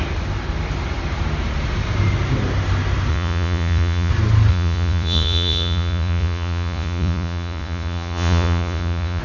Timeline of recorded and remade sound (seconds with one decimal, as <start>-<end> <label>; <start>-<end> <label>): 0.0-3.1 recorded; 3.1-4.1 remade; 4.1-4.5 recorded; 4.5-9.2 remade